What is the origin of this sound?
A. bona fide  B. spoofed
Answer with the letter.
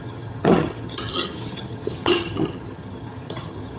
B